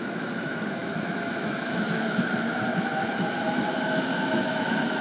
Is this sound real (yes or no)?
no